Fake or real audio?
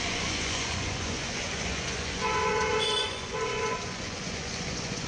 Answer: fake